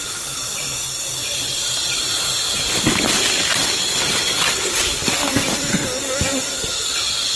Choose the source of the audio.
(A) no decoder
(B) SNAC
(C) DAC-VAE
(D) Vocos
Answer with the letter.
A